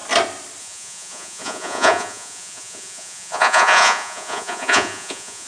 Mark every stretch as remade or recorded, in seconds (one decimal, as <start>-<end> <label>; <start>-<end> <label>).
0.0-0.6 recorded; 0.6-5.5 remade